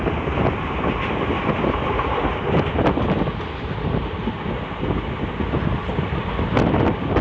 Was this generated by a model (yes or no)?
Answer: no